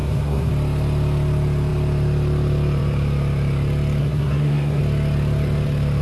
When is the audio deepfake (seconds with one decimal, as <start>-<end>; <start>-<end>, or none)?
0.0-0.5; 4.0-4.8

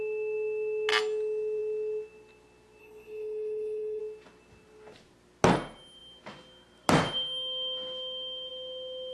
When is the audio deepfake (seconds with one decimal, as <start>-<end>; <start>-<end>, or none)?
2.8-4.0

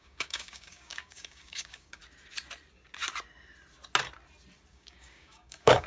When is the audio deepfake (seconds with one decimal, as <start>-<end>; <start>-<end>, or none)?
0.0-2.0; 4.7-5.9

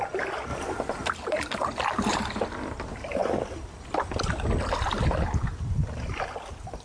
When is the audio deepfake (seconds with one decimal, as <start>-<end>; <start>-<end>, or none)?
none